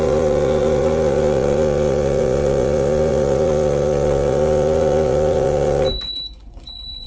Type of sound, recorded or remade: remade